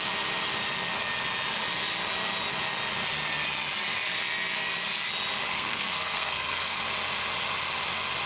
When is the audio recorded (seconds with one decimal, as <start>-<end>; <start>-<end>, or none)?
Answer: 0.0-5.5; 6.8-8.3